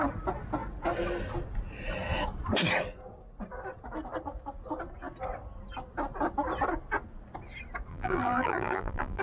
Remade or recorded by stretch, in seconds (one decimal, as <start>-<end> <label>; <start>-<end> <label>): 0.0-7.9 recorded; 7.9-9.2 remade